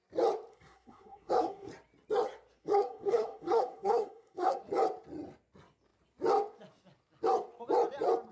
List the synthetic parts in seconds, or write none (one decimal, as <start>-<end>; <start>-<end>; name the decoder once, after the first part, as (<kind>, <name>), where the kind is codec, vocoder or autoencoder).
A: 0.5-1.7 (codec, SNAC); 2.6-4.6